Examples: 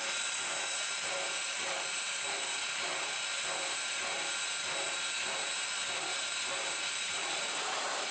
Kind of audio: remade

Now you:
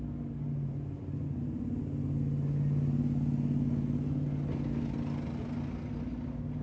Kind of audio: recorded